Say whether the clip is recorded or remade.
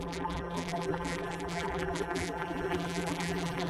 remade